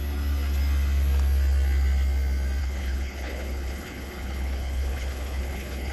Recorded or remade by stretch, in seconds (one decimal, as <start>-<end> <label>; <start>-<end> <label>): 0.0-2.6 recorded; 2.6-5.9 remade